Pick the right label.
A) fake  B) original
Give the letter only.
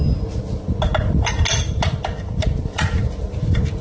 B